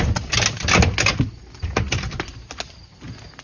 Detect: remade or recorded recorded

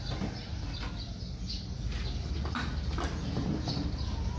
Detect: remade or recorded recorded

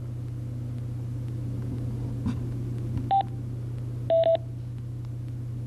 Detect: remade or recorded recorded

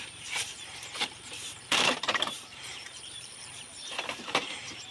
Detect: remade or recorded remade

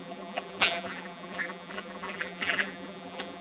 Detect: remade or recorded remade